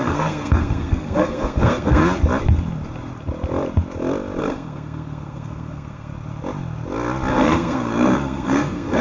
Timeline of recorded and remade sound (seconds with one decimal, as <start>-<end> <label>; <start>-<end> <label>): 0.0-2.0 remade; 2.0-4.4 recorded; 4.4-6.1 remade; 6.1-7.3 recorded; 7.3-9.0 remade